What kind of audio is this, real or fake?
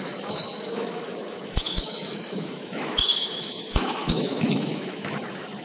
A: fake